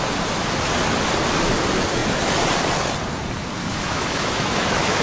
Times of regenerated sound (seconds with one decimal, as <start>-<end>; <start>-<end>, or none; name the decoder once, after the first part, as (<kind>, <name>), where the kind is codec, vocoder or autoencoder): 3.6-5.0 (autoencoder, DAC-VAE)